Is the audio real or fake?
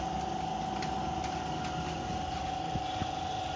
real